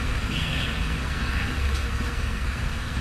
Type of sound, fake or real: fake